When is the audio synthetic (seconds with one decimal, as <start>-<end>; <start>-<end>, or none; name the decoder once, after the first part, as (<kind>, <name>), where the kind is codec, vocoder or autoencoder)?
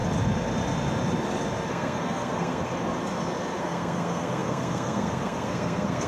1.7-2.7 (codec, SNAC); 3.6-6.1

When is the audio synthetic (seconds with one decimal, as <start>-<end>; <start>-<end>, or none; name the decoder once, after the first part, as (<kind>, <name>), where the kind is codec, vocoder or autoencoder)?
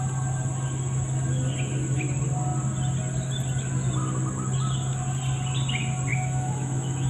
6.1-7.1 (autoencoder, DAC-VAE)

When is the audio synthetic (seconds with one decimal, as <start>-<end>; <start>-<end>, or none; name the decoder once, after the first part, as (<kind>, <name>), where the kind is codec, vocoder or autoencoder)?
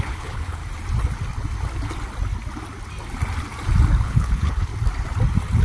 0.0-0.6 (codec, HILCodec); 4.0-4.7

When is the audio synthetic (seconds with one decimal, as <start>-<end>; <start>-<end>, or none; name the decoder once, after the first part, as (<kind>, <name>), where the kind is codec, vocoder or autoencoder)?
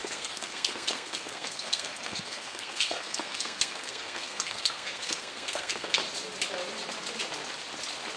0.0-6.0 (codec, SNAC)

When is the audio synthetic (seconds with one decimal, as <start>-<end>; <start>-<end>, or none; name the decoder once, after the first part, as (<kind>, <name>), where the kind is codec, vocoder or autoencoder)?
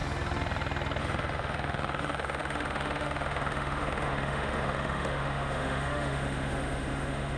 1.0-7.4 (autoencoder, DAC-VAE)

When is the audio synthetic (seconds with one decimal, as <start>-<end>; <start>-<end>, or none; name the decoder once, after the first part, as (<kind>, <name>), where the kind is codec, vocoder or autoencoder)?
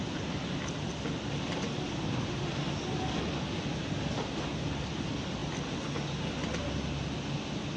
none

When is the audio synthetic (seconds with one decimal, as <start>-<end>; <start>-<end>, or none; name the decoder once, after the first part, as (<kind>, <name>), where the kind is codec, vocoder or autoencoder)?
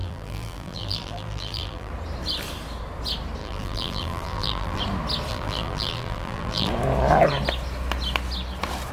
0.0-1.9 (vocoder, BigVGAN v2); 3.4-4.8; 5.3-6.7